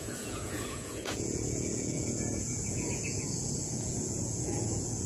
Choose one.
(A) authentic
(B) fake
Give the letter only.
B